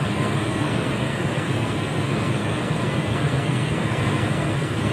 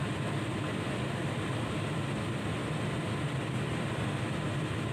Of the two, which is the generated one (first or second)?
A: first